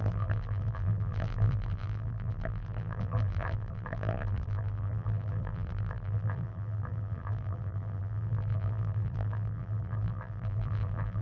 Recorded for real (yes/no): no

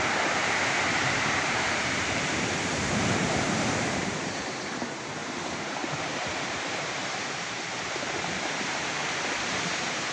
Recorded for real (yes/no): no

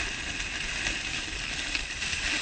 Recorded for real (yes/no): yes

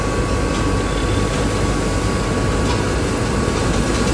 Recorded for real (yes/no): yes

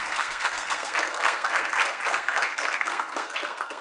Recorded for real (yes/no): no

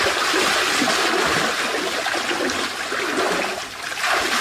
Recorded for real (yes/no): yes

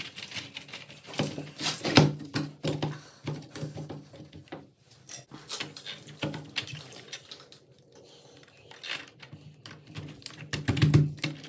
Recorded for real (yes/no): yes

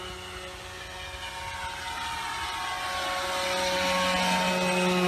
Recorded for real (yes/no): yes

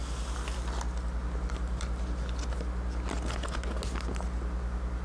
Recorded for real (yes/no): yes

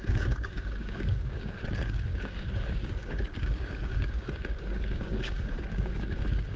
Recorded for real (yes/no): no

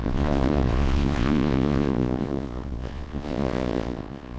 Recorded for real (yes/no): no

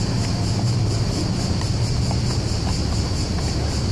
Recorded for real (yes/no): yes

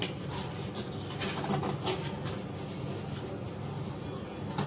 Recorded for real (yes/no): yes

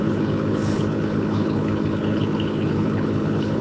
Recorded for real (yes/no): no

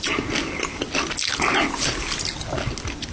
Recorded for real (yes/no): yes